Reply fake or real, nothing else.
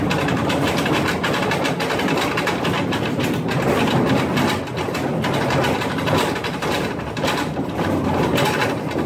real